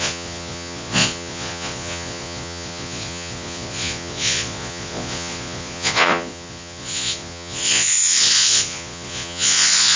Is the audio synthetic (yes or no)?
yes